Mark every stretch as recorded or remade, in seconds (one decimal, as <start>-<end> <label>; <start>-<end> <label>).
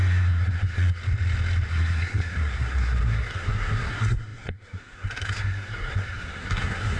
0.0-1.0 remade; 1.0-1.7 recorded; 1.7-7.0 remade